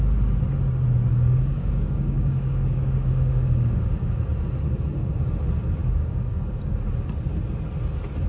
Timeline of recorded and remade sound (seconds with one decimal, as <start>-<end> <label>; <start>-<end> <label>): 0.0-1.1 recorded; 1.1-4.2 remade; 4.2-5.8 recorded; 5.8-6.6 remade; 6.6-8.3 recorded